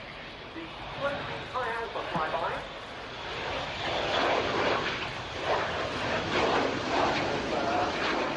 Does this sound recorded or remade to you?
recorded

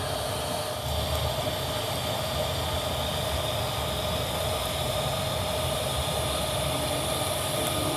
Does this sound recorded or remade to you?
recorded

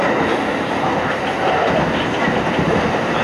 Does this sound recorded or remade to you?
recorded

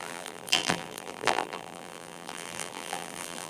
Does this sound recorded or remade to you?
remade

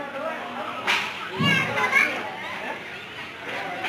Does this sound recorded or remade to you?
recorded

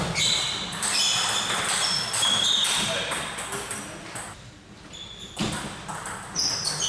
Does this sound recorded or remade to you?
recorded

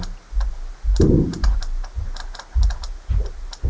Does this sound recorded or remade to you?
recorded